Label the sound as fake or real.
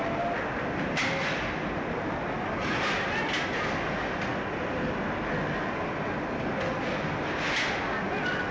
real